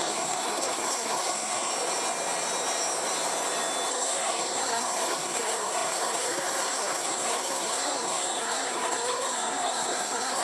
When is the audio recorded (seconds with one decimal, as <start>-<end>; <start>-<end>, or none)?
1.7-3.9